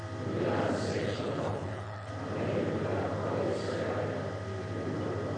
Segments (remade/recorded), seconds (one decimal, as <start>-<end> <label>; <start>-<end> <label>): 0.0-0.9 recorded; 0.9-2.1 remade; 2.1-5.4 recorded